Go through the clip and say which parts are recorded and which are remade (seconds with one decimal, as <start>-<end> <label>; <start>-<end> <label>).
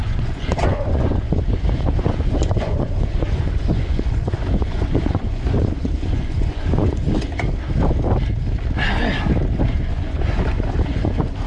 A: 0.0-7.0 remade; 7.0-9.7 recorded; 9.7-11.5 remade